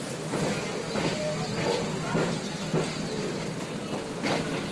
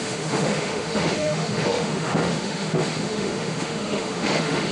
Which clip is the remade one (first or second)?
second